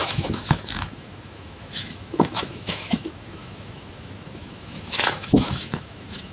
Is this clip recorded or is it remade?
remade